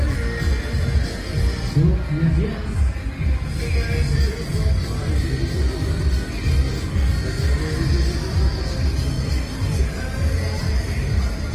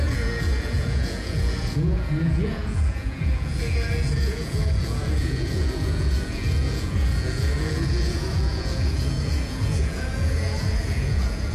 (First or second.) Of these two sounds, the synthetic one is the second